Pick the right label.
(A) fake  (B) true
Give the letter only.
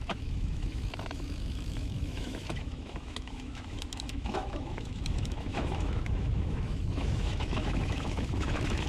A